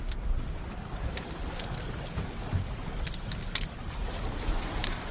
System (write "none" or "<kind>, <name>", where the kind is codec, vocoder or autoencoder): none